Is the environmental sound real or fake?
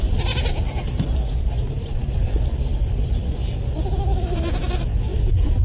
real